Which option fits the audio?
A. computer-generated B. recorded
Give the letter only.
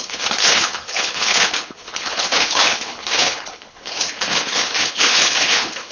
A